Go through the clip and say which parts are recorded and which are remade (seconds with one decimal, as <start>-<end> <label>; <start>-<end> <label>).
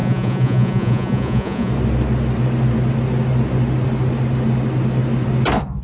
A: 0.0-1.7 remade; 1.7-5.8 recorded